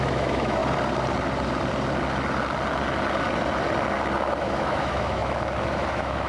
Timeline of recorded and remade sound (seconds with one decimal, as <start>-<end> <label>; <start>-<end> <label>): 0.0-0.6 remade; 0.6-4.4 recorded; 4.4-6.3 remade